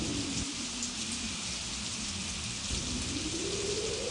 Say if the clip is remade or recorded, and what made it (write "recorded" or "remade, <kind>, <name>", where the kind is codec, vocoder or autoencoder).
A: recorded